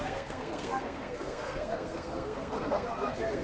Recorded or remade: remade